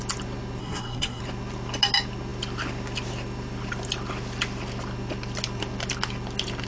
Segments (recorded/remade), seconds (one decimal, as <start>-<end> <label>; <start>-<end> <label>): 0.0-0.6 recorded; 0.6-1.2 remade; 1.2-6.7 recorded